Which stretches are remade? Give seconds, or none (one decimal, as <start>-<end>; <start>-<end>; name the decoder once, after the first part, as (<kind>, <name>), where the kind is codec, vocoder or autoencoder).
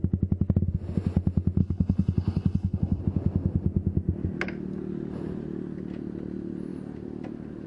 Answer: 1.6-3.0 (codec, HILCodec)